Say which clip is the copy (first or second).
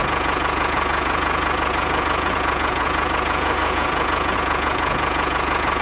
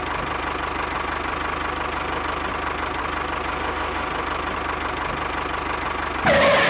first